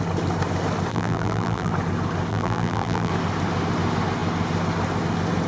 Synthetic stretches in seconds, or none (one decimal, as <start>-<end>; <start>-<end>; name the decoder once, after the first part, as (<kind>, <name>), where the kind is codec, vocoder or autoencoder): 0.9-1.7 (vocoder, BigVGAN v2); 2.3-3.1